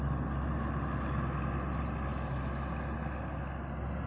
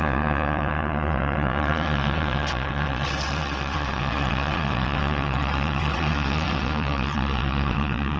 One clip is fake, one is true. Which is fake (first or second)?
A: second